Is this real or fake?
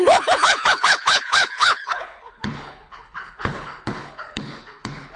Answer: fake